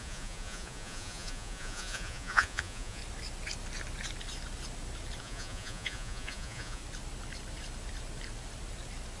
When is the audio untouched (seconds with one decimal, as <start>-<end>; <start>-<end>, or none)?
3.0-5.2; 6.8-9.2